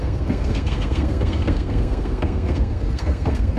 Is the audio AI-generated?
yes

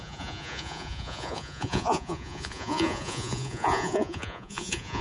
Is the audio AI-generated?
yes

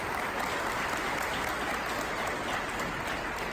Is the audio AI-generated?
no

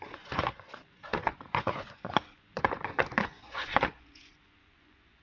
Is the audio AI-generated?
yes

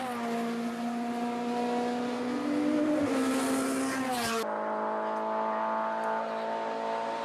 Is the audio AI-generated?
no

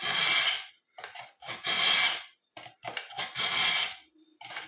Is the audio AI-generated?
no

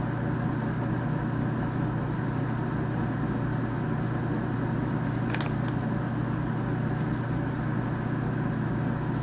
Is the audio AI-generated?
no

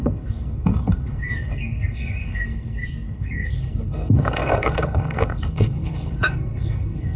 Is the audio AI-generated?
yes